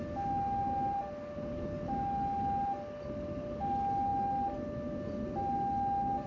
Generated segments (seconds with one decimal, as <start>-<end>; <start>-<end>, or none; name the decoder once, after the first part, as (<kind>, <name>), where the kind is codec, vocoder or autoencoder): none